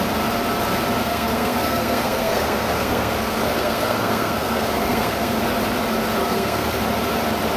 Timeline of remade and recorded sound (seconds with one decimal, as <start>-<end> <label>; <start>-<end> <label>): 0.0-1.0 recorded; 1.0-5.4 remade; 5.4-6.2 recorded; 6.2-6.8 remade; 6.8-7.6 recorded